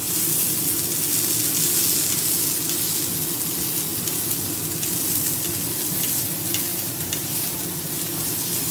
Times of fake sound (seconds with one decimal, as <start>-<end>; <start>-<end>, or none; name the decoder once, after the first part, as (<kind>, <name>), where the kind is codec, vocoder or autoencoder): 6.7-7.6 (vocoder, BigVGAN v2)